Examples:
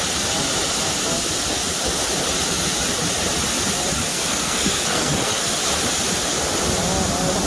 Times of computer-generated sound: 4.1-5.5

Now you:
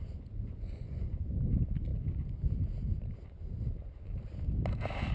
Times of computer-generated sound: 0.0-1.3

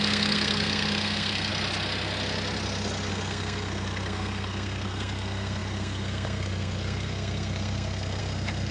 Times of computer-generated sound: 0.0-1.5; 3.1-8.7

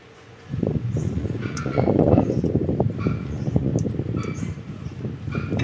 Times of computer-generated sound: 0.0-2.6; 3.2-3.7

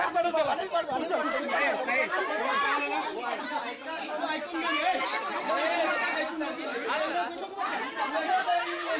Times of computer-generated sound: 0.0-3.6; 5.2-6.7; 8.4-9.0